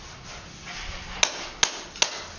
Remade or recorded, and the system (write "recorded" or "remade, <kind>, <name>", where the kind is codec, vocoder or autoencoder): recorded